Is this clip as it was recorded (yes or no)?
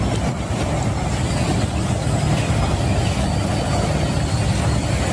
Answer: yes